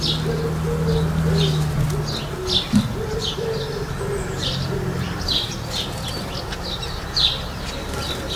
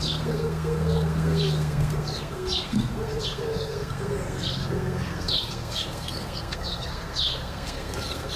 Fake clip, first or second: second